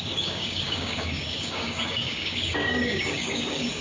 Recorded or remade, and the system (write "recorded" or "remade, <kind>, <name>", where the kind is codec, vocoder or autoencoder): remade, codec, DAC